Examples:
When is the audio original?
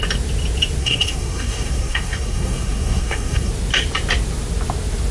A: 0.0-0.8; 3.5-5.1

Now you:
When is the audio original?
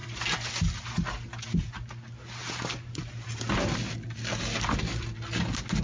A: 0.0-5.8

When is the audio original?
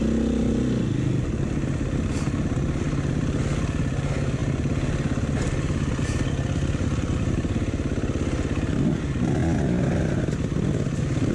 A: 0.0-11.3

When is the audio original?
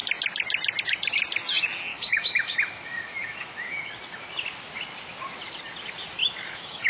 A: 0.0-1.9; 3.9-6.2